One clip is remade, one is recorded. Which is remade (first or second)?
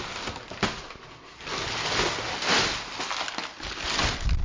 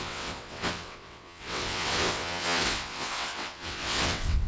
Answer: second